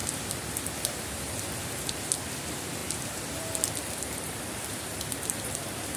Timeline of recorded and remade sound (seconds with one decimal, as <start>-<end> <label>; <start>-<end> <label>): 0.0-6.0 recorded

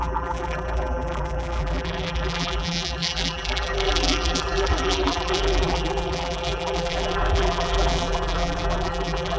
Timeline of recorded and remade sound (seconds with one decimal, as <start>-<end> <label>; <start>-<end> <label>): 0.0-9.4 remade

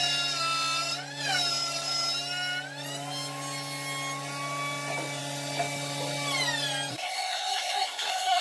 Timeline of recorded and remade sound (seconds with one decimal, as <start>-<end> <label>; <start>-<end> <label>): 0.0-6.9 recorded; 6.9-8.4 remade

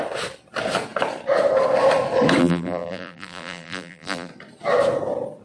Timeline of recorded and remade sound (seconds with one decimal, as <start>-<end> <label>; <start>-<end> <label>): 0.0-2.4 recorded; 2.4-4.3 remade; 4.3-5.4 recorded

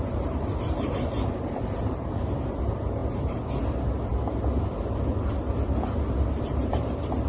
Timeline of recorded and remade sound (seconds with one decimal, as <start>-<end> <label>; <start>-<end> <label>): 0.0-4.1 remade; 4.1-6.3 recorded; 6.3-7.3 remade